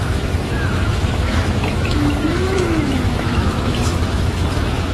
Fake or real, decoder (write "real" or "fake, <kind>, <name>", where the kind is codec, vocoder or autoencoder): fake, autoencoder, DAC-VAE